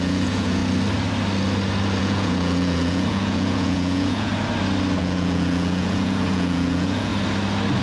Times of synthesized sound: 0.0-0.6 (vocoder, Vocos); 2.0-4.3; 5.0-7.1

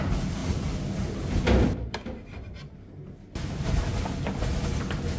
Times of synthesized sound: none

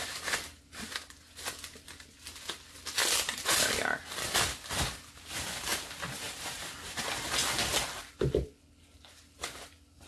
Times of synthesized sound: none

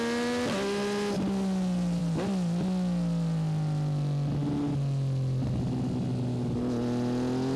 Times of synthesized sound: none

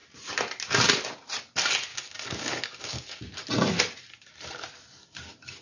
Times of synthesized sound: 1.9-3.2 (codec, DAC)